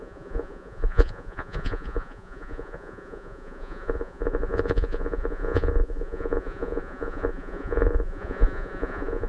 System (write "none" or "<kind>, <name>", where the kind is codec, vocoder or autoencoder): vocoder, Vocos